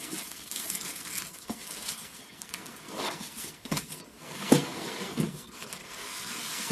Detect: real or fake fake